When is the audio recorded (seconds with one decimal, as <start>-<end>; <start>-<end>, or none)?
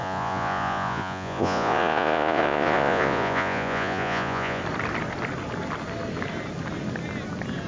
4.6-7.7